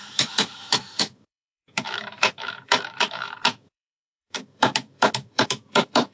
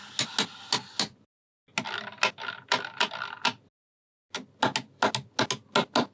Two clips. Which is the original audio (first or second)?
second